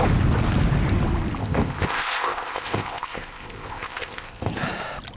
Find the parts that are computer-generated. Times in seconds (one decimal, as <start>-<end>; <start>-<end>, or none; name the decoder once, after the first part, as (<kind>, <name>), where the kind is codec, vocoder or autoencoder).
1.4-4.5 (codec, ZipCodec)